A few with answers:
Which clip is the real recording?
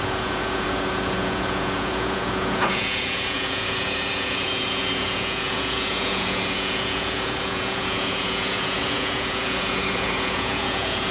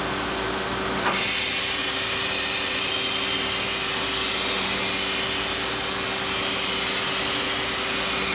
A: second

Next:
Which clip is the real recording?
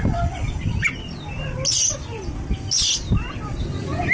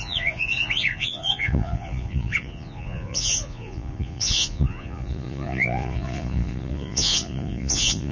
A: first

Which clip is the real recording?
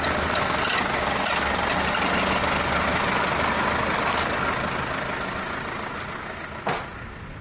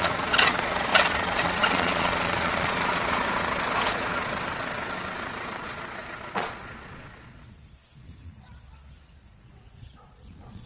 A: first